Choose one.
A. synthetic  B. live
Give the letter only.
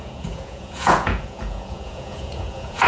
A